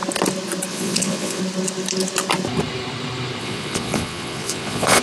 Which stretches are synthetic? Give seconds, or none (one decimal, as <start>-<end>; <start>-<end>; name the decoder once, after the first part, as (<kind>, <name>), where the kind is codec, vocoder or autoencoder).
0.7-1.4 (vocoder, Vocos); 3.4-5.0